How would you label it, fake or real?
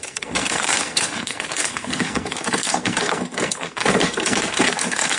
fake